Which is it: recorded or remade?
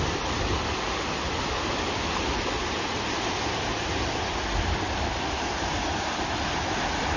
recorded